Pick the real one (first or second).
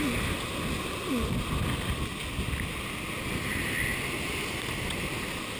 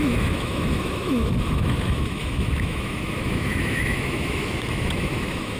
first